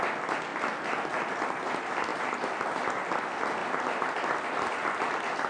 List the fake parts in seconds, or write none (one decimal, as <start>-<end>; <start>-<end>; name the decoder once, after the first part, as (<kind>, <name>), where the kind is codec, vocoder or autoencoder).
2.1-2.7 (vocoder, BigVGAN v2); 3.6-5.1